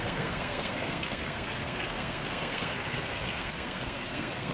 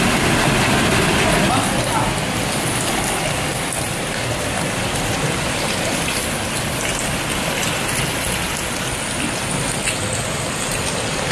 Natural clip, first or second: second